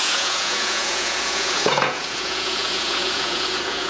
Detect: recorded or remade remade